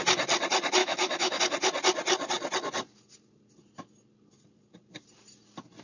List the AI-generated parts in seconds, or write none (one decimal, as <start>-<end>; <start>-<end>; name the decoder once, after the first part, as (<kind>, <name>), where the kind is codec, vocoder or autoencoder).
0.8-1.4 (autoencoder, DAC-VAE)